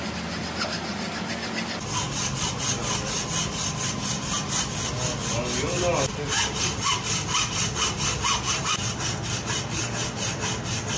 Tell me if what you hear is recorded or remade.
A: recorded